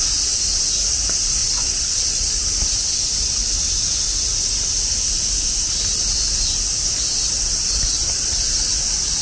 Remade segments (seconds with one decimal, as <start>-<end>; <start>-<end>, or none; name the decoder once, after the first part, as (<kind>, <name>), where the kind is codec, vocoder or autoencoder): 1.4-2.3 (vocoder, WaveNeXt)